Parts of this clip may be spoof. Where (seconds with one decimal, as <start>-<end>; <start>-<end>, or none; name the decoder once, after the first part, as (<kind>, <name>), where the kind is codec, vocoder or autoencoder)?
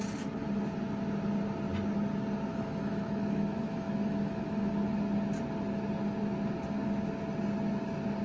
2.5-4.7 (autoencoder, DAC-VAE)